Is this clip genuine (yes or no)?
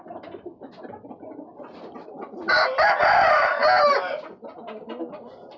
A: yes